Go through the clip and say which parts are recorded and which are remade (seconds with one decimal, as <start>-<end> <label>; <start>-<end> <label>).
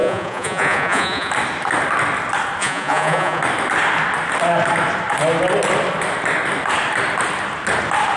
0.0-1.3 remade; 1.3-2.6 recorded; 2.6-3.4 remade; 3.4-8.2 recorded